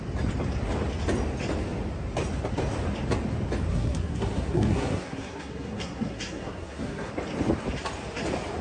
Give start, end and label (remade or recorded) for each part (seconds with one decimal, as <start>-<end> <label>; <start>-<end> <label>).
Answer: 0.0-3.7 recorded; 3.7-7.1 remade; 7.1-8.6 recorded